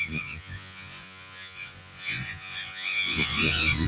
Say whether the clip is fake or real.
fake